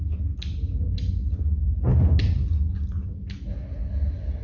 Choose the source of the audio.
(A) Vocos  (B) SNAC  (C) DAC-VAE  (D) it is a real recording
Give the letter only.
D